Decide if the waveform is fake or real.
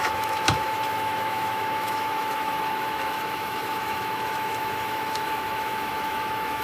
fake